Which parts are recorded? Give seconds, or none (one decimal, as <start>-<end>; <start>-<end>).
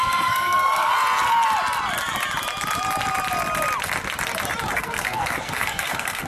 0.9-4.7